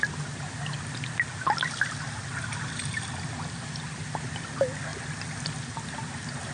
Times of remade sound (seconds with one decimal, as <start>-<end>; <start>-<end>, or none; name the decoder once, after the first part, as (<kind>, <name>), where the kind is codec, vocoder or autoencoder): none